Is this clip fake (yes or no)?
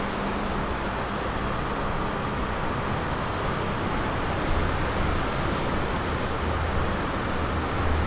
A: no